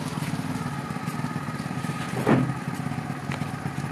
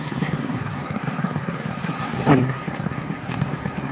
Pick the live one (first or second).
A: first